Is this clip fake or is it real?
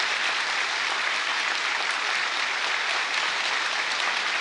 real